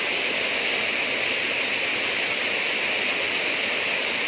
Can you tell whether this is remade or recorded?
recorded